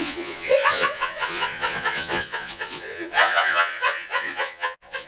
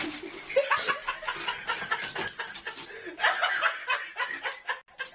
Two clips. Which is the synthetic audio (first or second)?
first